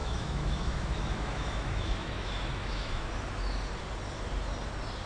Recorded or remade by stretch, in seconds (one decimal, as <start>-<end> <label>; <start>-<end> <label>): 0.0-3.1 remade; 3.1-5.1 recorded